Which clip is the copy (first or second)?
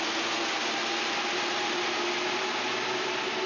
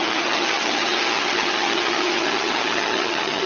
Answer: second